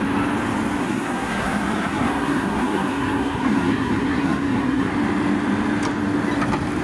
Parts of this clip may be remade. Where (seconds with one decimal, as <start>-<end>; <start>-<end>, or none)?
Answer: 0.8-4.9